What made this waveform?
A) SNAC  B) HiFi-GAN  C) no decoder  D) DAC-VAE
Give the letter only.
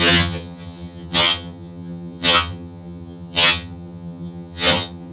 B